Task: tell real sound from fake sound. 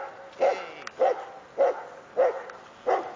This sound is real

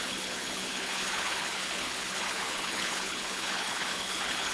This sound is fake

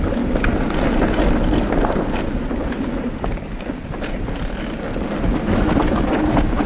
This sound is real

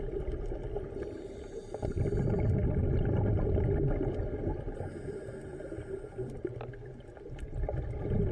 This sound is real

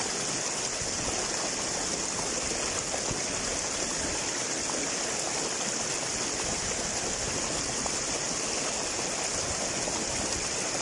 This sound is real